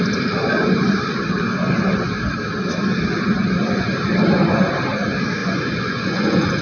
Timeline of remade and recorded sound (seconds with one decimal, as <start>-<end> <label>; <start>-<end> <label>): 0.0-5.4 recorded; 5.4-6.6 remade